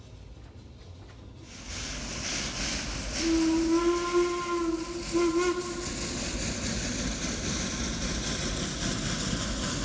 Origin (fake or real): real